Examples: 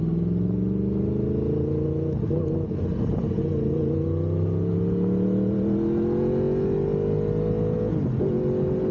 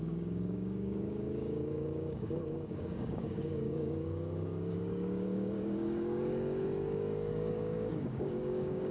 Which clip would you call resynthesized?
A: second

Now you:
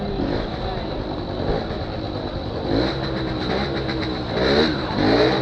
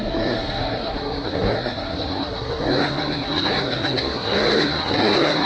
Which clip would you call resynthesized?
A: second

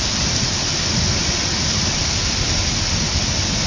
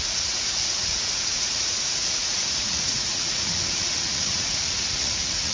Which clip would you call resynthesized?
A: second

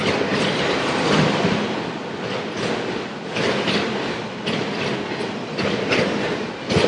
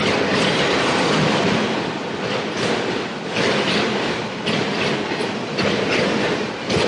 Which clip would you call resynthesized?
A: second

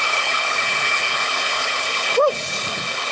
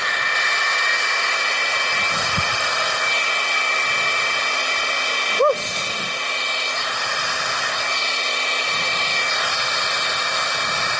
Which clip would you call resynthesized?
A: first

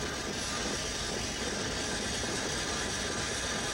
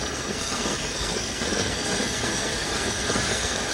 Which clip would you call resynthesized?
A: second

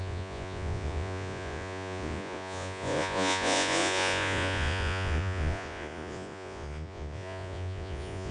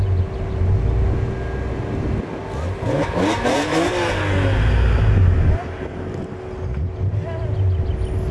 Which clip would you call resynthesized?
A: first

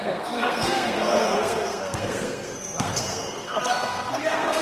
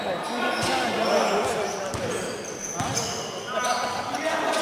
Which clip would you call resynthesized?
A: first